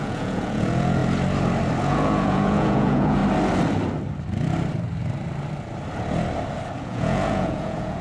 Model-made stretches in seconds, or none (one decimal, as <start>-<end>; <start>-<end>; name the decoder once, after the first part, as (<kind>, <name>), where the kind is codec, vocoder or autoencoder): 0.0-1.0 (vocoder, Vocos); 1.8-3.2; 6.8-8.0